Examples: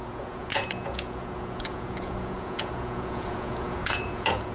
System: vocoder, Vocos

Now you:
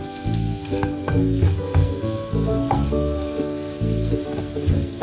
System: codec, SNAC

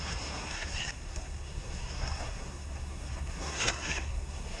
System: codec, SNAC